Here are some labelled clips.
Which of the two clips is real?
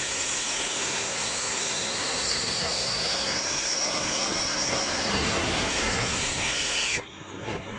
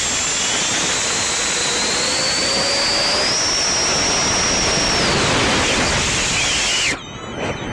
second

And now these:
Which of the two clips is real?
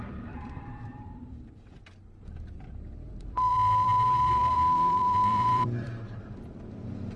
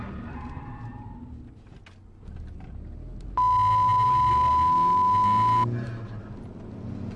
second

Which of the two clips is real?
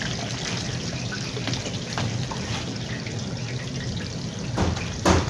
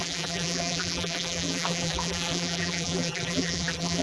first